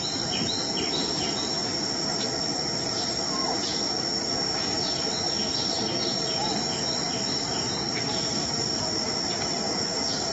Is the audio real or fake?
real